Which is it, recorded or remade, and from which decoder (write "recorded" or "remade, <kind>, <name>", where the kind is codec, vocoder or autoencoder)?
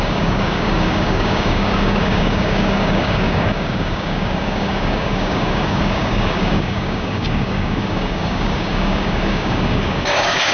remade, codec, DAC